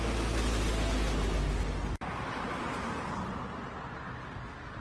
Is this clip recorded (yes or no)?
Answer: yes